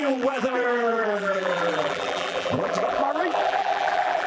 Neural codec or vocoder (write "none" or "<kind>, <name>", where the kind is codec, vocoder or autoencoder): vocoder, BigVGAN v2